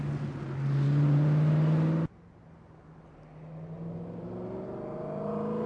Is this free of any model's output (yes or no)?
yes